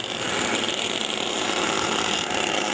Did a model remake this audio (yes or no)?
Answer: yes